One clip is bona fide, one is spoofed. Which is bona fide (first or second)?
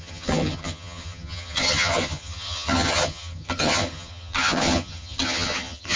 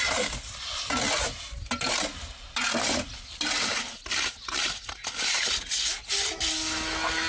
second